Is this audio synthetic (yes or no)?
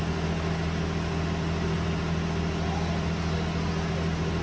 no